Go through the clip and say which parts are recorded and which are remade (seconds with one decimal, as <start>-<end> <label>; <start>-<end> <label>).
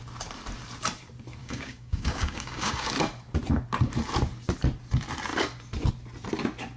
0.0-1.4 recorded; 1.4-2.9 remade; 2.9-6.8 recorded